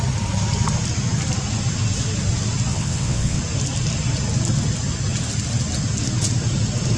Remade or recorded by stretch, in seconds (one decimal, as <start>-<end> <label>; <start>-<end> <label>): 0.0-2.7 recorded; 2.7-3.4 remade; 3.4-7.0 recorded